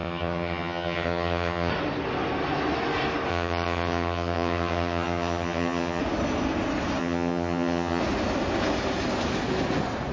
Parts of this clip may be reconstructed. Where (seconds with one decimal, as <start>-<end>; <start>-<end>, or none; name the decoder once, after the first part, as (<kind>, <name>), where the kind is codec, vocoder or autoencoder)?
0.0-1.7 (vocoder, HiFi-GAN); 3.3-6.0; 7.0-8.0